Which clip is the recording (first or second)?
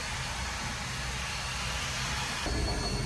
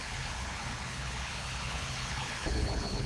first